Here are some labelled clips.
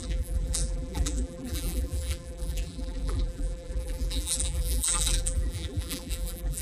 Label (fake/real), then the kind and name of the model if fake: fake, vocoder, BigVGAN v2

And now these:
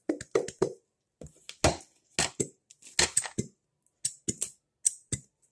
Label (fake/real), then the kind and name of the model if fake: real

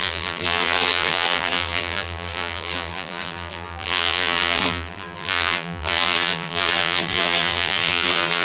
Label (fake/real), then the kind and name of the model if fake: fake, vocoder, BigVGAN v2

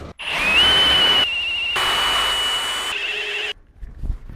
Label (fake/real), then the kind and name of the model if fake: real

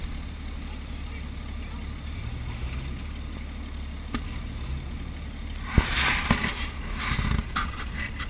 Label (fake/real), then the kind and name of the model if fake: real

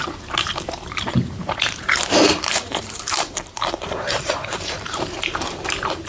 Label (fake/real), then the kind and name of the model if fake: fake, vocoder, BigVGAN v2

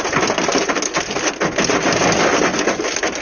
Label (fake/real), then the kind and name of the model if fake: real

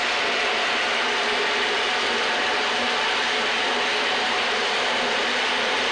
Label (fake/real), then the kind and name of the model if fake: fake, vocoder, BigVGAN v2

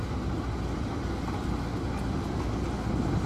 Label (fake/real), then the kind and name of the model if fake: real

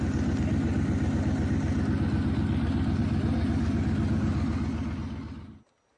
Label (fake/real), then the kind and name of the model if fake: real